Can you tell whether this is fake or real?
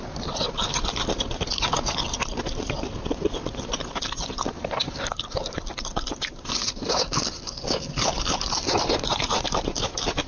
real